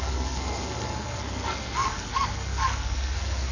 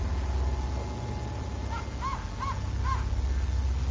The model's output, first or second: first